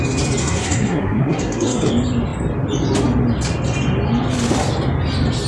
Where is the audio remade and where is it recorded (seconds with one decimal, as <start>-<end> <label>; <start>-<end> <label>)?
0.0-0.4 recorded; 0.4-1.9 remade; 1.9-5.5 recorded